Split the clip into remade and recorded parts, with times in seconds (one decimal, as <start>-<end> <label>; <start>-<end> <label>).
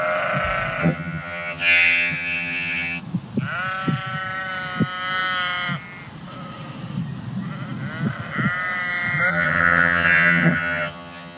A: 0.0-0.8 recorded; 0.8-3.0 remade; 3.0-9.3 recorded; 9.3-11.4 remade